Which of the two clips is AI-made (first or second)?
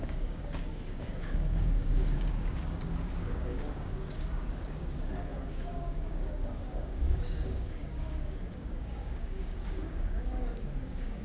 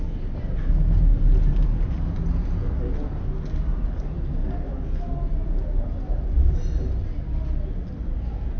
first